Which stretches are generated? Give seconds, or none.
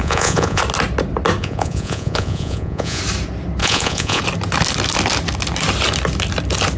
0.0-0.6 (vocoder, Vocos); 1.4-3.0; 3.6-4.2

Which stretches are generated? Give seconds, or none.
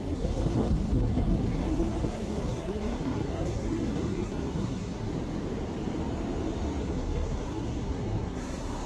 0.0-5.1 (codec, SNAC); 6.8-8.9